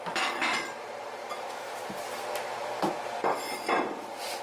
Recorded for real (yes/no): yes